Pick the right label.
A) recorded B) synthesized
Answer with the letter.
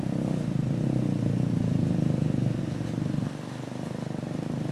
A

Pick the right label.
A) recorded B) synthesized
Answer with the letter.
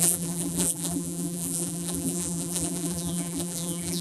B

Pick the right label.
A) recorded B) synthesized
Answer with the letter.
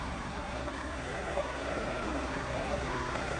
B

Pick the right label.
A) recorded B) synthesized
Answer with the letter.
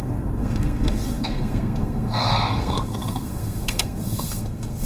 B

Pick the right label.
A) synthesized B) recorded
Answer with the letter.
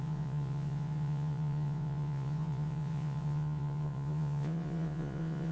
A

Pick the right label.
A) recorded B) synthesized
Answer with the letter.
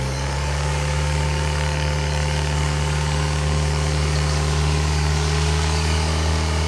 B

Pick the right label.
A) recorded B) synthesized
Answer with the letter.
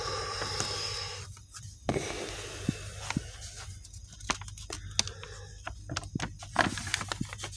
A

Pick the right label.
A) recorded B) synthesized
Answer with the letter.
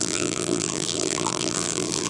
B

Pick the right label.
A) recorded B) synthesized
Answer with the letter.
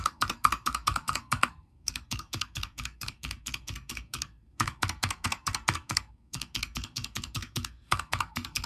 B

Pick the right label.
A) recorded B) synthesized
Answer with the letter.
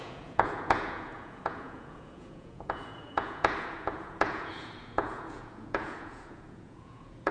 B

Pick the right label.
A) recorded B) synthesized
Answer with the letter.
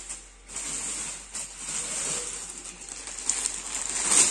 A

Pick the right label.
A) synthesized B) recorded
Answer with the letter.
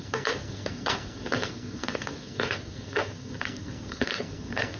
A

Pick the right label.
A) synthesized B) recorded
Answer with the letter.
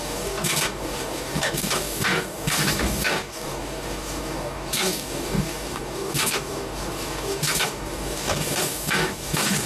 A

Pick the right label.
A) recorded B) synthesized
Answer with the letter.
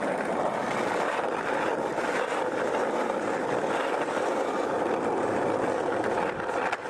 A